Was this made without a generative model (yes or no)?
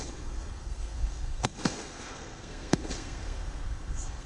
no